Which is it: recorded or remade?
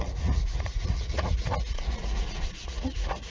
remade